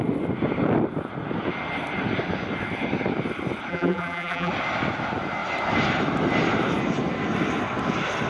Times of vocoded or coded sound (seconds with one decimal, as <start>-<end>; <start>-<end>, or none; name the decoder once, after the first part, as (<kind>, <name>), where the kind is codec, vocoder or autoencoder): 3.7-4.5 (vocoder, BigVGAN v2)